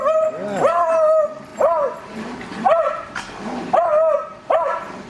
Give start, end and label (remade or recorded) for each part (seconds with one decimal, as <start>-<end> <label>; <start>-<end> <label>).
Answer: 0.0-1.5 recorded; 1.5-2.9 remade; 2.9-5.1 recorded